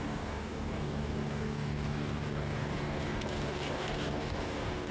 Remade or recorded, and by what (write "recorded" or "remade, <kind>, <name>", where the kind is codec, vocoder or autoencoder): remade, codec, DAC